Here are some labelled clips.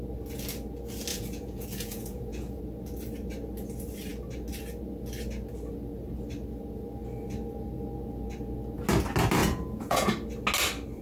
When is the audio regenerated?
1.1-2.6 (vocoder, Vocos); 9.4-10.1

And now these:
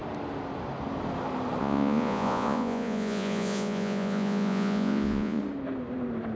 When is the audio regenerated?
1.6-5.4 (vocoder, Vocos)

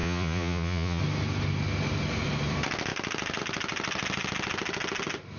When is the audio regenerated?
0.0-1.0 (vocoder, Vocos)

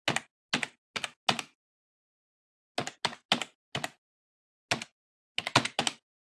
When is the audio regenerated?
none